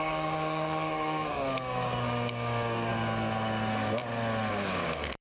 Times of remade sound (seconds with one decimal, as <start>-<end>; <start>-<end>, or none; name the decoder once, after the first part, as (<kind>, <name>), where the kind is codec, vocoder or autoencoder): 0.0-2.9 (codec, DAC); 4.5-5.2